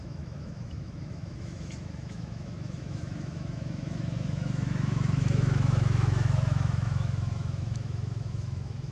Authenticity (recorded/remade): remade